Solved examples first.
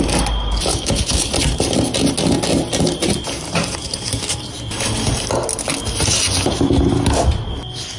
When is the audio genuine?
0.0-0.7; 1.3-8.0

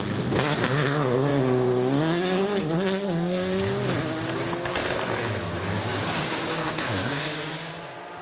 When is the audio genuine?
0.0-1.3; 2.6-5.9; 7.5-8.2

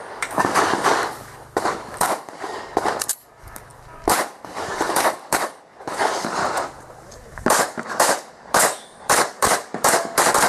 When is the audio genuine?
6.4-7.1

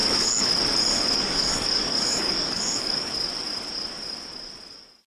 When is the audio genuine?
0.5-0.9; 3.1-5.1

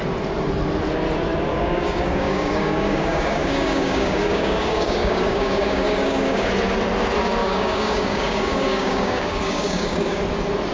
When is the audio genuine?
0.0-1.5; 6.5-7.4; 10.2-10.7

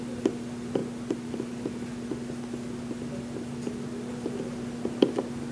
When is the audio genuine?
0.0-5.5

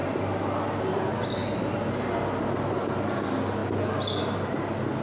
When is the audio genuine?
0.0-5.0